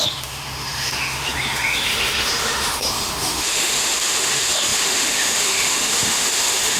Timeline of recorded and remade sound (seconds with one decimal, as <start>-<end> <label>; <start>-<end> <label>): 0.0-6.8 remade

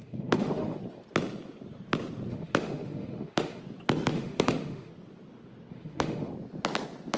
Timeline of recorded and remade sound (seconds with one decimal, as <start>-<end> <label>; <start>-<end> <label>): 0.0-0.8 remade; 0.8-2.3 recorded; 2.3-3.6 remade; 3.6-4.1 recorded; 4.1-4.9 remade; 4.9-5.7 recorded; 5.7-6.3 remade; 6.3-7.2 recorded